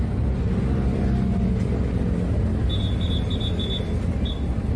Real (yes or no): yes